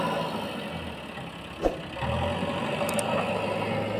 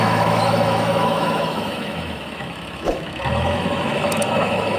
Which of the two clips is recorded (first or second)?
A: first